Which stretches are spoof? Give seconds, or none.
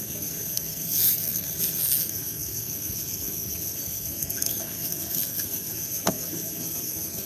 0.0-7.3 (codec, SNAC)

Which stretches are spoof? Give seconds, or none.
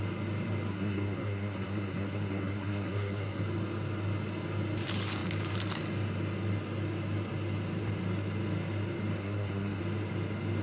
0.7-3.4 (codec, SNAC); 9.2-9.8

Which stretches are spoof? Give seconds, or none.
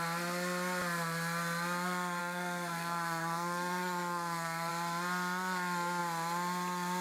2.2-4.7 (codec, SNAC)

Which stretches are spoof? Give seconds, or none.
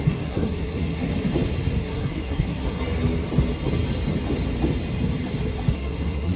0.0-1.1 (codec, SNAC); 1.8-2.8; 5.7-6.4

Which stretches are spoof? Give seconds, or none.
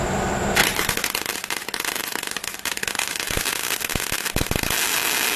none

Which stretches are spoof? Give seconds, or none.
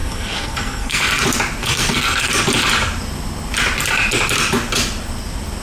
0.0-1.2 (codec, SNAC); 1.6-2.3